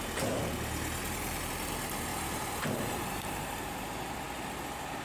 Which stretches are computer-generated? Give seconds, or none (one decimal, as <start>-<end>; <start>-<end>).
2.1-3.6